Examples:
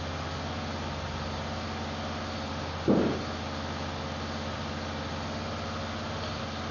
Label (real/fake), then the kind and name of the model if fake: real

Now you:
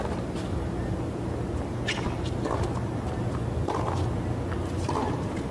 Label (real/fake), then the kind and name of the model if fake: real